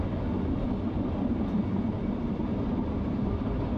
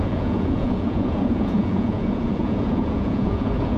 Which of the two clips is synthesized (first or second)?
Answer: second